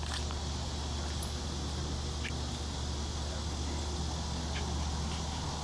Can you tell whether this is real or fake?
real